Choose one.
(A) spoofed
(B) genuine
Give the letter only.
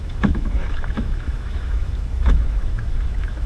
A